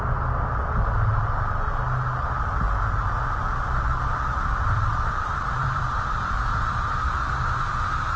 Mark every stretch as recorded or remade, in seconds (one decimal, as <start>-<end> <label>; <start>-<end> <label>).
0.0-4.9 recorded; 4.9-5.8 remade; 5.8-8.2 recorded